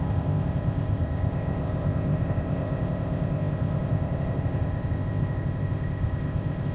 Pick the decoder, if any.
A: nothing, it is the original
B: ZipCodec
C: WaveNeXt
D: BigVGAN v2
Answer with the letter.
B